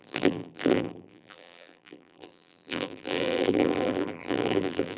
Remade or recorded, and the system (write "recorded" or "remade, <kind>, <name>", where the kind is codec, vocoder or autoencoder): remade, vocoder, BigVGAN v2